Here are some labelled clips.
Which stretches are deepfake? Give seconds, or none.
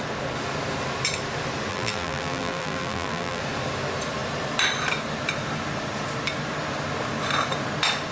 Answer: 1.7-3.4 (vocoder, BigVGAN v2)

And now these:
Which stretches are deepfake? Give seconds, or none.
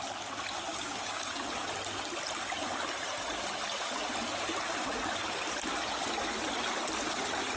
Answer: 0.7-1.3 (codec, DAC)